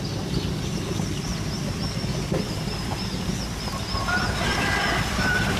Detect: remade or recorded recorded